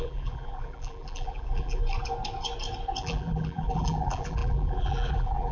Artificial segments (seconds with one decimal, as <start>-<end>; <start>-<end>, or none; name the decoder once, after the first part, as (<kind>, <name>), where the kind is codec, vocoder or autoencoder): 0.0-1.8 (vocoder, BigVGAN v2); 3.0-5.5